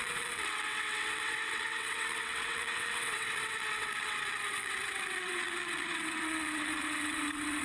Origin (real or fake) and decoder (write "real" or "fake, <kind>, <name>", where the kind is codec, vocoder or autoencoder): fake, vocoder, WaveNeXt